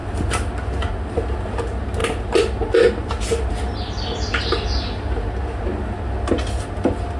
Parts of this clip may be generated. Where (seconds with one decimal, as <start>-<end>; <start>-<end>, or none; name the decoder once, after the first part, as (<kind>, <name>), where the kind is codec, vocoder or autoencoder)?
none